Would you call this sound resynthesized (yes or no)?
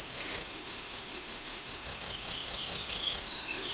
yes